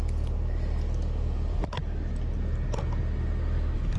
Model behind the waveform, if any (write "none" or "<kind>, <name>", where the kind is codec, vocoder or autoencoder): none